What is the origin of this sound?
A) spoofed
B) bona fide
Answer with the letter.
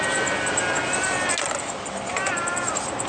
B